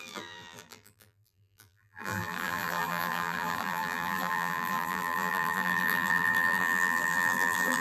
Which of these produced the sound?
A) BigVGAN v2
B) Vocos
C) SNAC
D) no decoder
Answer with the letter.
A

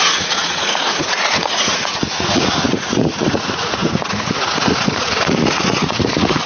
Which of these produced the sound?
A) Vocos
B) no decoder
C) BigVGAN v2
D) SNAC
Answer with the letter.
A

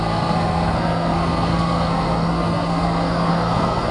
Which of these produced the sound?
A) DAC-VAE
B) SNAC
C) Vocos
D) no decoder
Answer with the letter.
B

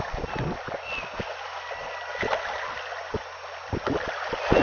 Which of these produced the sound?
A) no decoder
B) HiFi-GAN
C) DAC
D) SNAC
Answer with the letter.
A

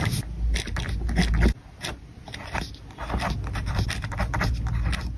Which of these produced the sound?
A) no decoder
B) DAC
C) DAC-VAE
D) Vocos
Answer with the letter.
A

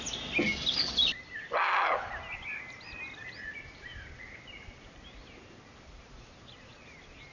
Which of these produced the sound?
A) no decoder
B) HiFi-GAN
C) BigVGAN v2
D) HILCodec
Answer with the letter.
A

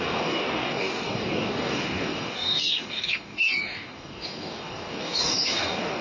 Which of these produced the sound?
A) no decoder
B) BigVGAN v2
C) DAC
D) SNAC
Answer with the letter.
C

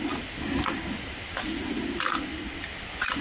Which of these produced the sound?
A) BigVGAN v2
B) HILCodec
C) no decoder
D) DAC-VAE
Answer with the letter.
C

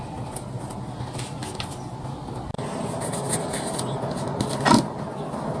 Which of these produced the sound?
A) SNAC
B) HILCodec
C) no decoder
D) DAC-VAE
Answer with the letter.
C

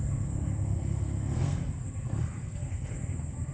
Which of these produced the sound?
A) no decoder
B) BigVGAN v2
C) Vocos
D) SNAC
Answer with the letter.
D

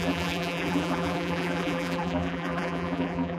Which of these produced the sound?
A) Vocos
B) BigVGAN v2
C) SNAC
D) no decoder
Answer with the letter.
B